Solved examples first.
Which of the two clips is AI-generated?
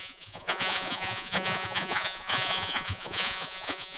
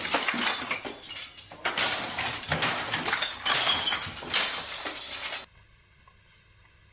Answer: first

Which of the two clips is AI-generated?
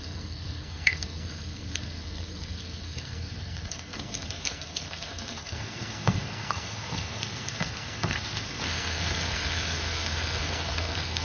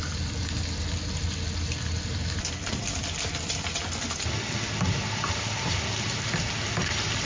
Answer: first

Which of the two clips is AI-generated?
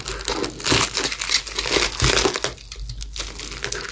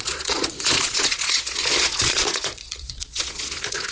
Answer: second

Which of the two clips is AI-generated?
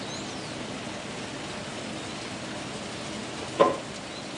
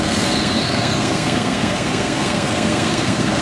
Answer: second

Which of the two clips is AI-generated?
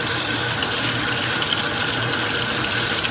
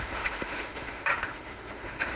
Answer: second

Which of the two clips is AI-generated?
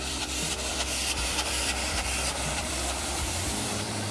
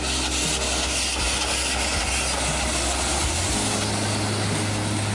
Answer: first